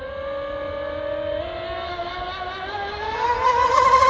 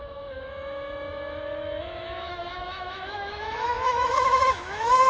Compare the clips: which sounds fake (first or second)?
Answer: second